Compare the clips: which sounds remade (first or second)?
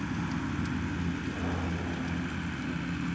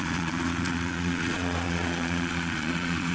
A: second